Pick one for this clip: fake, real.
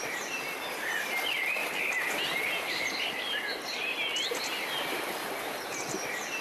real